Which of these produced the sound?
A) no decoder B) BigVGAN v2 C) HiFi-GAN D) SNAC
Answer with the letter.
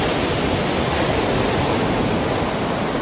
A